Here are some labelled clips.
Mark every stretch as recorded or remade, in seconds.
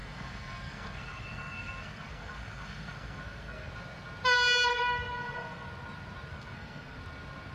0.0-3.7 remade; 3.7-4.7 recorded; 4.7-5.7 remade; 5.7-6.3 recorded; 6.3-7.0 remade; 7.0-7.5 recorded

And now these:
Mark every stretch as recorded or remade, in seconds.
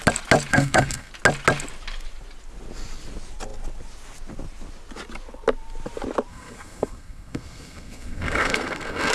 0.0-0.5 recorded; 0.5-1.1 remade; 1.1-6.3 recorded; 6.3-9.1 remade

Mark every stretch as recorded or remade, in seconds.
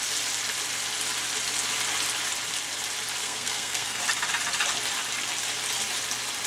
0.0-3.2 recorded; 3.2-4.0 remade; 4.0-6.5 recorded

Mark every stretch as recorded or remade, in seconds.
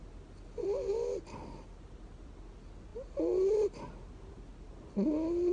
0.0-5.5 recorded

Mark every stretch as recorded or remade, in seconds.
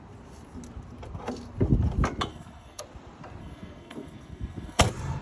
0.0-2.3 recorded; 2.3-2.8 remade; 2.8-3.4 recorded; 3.4-4.8 remade; 4.8-5.2 recorded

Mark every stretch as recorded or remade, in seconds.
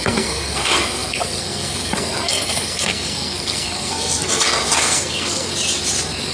0.0-5.5 remade; 5.5-6.3 recorded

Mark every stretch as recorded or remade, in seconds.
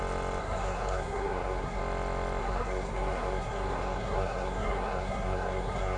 0.0-0.4 recorded; 0.4-1.8 remade; 1.8-2.4 recorded; 2.4-6.0 remade